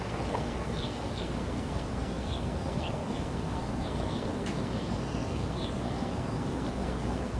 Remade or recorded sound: remade